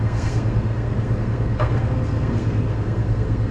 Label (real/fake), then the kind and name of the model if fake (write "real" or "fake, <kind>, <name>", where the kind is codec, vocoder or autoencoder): fake, codec, SNAC